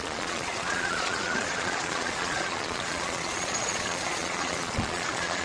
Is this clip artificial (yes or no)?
yes